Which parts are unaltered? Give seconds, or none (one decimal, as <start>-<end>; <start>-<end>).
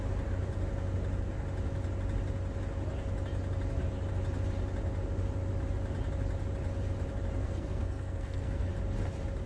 0.0-7.4; 8.7-9.5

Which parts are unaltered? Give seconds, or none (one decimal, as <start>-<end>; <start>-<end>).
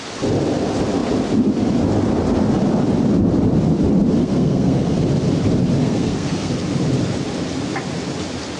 0.0-4.2; 5.0-5.8; 6.5-8.6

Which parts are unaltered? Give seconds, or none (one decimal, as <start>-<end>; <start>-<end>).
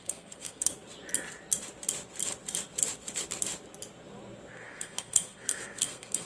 0.7-4.5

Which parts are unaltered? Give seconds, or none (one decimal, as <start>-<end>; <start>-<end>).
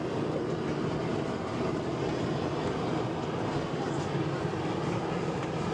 0.0-5.7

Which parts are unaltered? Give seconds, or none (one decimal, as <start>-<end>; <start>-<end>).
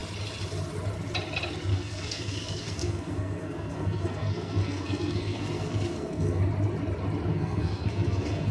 0.0-1.7; 6.4-7.3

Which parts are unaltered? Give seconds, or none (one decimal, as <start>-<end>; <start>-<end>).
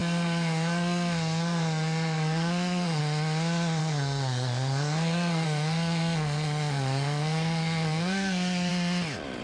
3.0-3.8; 8.7-9.4